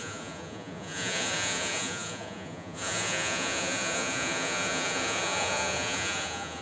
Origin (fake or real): fake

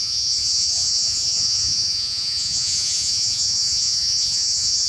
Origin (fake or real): fake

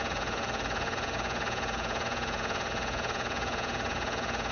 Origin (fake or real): fake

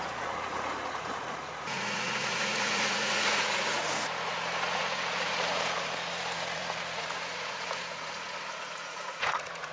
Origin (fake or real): fake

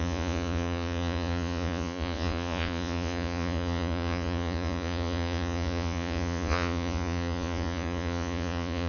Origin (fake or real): fake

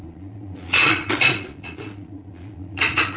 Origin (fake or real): fake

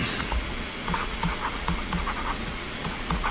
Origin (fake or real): fake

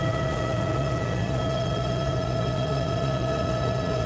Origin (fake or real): fake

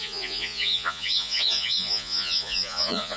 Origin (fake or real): fake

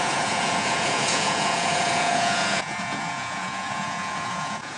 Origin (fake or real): fake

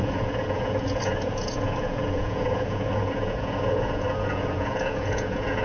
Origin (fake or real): fake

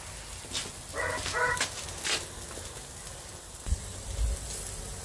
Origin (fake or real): real